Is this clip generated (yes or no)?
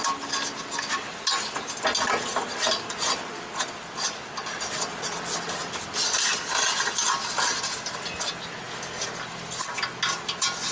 no